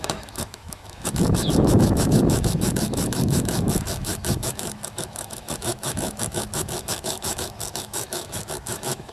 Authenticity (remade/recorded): remade